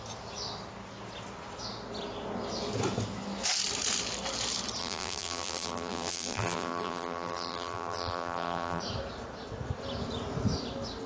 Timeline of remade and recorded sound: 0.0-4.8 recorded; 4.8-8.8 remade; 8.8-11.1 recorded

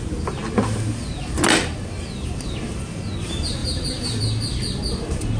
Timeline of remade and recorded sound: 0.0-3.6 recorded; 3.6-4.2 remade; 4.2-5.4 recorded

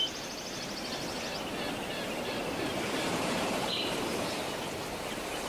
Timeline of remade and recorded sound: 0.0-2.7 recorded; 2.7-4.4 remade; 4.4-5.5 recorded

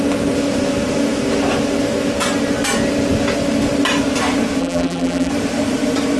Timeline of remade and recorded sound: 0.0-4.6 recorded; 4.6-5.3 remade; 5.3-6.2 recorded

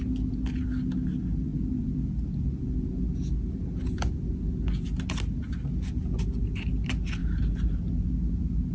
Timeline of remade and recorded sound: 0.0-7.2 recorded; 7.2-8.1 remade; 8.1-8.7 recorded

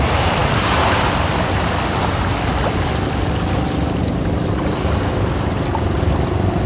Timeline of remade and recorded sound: 0.0-6.7 recorded